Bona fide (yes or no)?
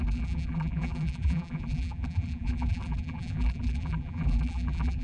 no